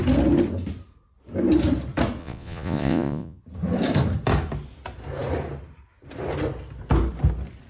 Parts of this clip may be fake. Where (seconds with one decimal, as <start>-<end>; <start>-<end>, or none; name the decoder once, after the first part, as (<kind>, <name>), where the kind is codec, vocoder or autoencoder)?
2.2-3.4 (vocoder, Vocos)